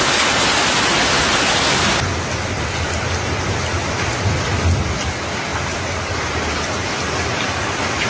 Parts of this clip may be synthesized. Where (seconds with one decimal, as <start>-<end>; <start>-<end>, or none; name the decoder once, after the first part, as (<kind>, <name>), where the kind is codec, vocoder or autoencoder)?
none